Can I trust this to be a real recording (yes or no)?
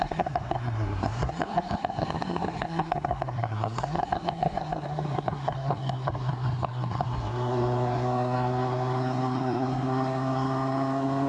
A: no